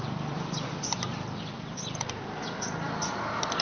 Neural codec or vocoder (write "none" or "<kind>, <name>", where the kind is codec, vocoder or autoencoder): vocoder, BigVGAN v2